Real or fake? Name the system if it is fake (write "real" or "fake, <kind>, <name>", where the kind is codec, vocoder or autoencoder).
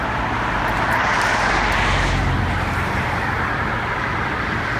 real